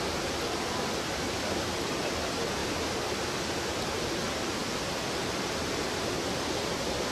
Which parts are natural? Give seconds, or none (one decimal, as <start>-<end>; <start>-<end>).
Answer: none